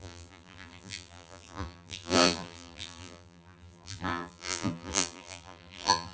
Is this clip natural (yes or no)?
no